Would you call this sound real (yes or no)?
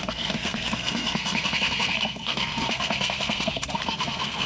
no